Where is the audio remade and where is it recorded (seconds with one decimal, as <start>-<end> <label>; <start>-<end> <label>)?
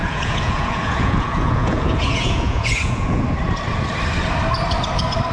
0.0-3.2 remade; 3.2-5.3 recorded